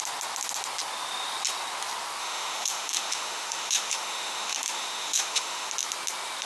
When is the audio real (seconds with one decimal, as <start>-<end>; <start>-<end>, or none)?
0.0-2.2; 5.7-6.5